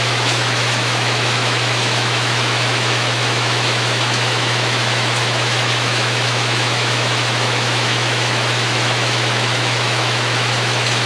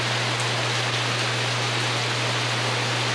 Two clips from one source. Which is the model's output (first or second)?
first